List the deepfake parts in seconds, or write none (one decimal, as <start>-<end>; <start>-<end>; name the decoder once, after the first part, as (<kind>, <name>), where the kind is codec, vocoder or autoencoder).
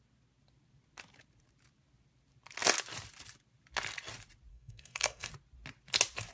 4.5-5.3 (codec, SNAC)